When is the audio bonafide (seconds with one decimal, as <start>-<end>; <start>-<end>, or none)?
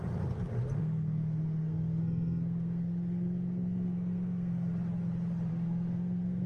0.0-0.8; 4.7-5.5